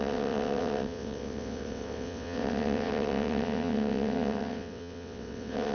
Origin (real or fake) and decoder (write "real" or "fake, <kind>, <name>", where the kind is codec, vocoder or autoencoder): fake, vocoder, WaveNeXt